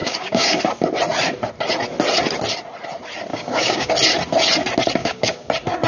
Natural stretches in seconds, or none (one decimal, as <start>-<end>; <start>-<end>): 0.6-3.3; 3.9-5.0; 5.5-5.9